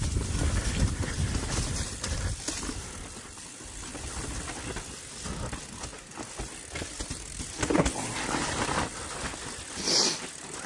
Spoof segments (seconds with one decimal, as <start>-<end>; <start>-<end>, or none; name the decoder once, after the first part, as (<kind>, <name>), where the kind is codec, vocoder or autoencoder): none